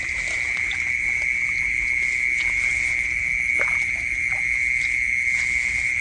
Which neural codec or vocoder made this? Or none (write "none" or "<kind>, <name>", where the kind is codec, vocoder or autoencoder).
none